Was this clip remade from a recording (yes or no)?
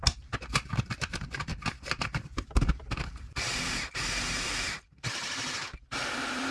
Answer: yes